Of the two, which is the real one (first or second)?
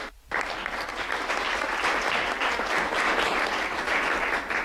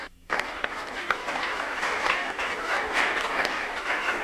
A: first